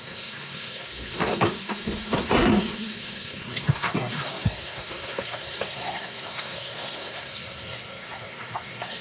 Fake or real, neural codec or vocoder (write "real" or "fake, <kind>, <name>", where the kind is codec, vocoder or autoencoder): fake, codec, SNAC